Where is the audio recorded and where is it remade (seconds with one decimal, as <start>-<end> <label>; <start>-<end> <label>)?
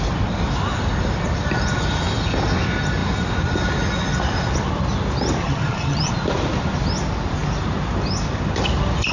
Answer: 0.0-5.4 recorded; 5.4-6.1 remade; 6.1-9.1 recorded